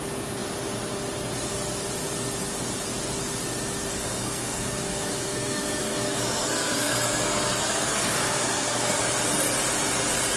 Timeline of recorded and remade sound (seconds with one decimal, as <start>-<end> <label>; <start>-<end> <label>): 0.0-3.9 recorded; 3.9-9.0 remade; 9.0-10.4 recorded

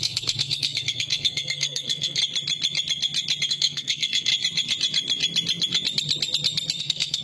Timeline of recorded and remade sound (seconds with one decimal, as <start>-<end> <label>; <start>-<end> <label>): 0.0-2.2 remade; 2.2-3.5 recorded; 3.5-4.3 remade; 4.3-6.8 recorded; 6.8-7.2 remade

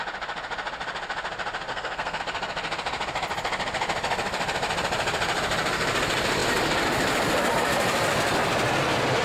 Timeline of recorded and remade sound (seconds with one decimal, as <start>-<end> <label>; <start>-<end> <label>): 0.0-1.7 recorded; 1.7-2.2 remade; 2.2-9.2 recorded